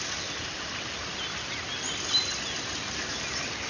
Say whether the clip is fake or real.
real